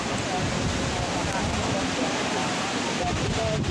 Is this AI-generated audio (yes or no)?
no